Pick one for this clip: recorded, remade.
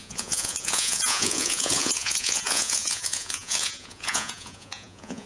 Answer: remade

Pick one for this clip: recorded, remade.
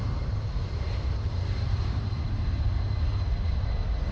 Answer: recorded